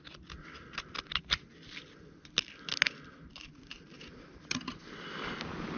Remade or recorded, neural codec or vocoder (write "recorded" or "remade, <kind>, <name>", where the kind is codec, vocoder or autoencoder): recorded